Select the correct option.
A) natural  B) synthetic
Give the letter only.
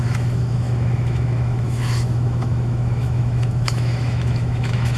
B